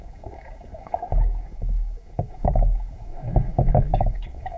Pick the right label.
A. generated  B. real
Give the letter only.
A